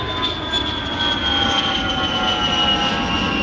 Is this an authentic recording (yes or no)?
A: yes